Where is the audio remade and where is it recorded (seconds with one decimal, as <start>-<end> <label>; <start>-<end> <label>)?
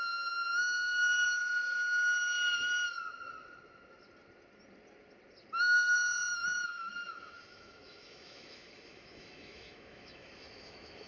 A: 0.0-6.3 recorded; 6.3-11.1 remade